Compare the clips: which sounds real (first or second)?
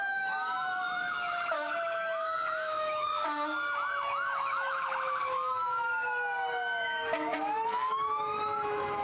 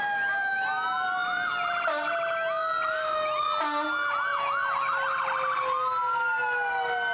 second